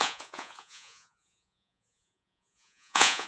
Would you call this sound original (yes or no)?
no